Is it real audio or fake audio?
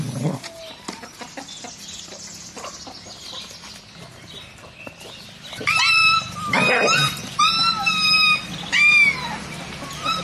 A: real